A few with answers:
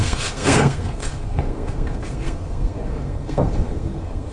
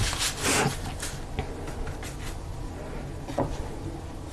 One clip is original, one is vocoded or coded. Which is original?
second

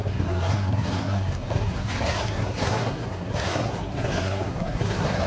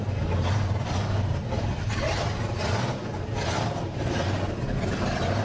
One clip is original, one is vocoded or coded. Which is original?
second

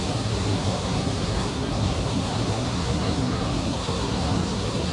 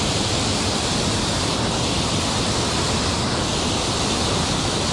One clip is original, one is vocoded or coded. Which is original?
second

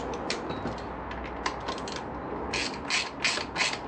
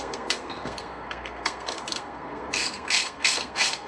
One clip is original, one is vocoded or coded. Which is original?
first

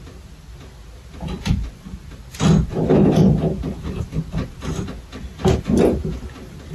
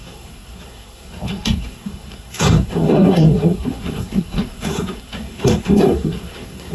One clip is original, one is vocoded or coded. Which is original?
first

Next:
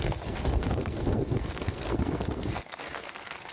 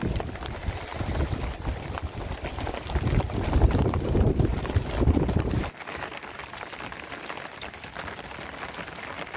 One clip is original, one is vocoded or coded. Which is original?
second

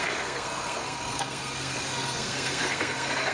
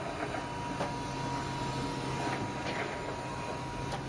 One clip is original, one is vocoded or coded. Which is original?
second